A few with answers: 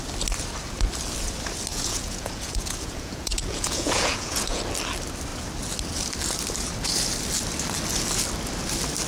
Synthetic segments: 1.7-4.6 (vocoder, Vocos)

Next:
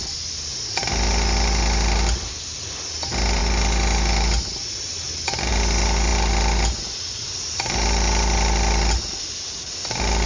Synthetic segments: none

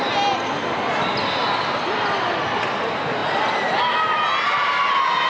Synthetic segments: none

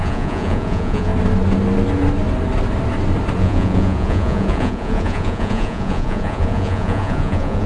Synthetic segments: 0.0-1.1 (vocoder, Vocos); 3.4-7.7

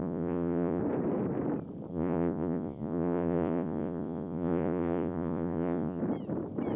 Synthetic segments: 0.0-0.8 (vocoder, Vocos); 1.9-6.0

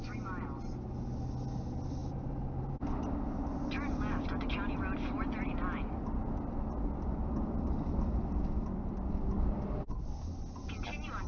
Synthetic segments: none

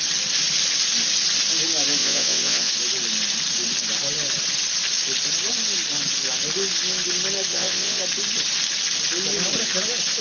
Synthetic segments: 2.0-2.7 (vocoder, Vocos); 7.5-8.0